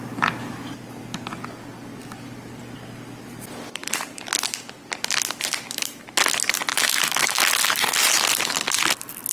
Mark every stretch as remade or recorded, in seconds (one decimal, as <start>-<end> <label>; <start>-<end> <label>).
0.0-6.7 recorded; 6.7-7.5 remade; 7.5-9.3 recorded